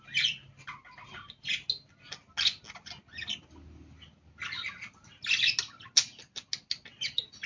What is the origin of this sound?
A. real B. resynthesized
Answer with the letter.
A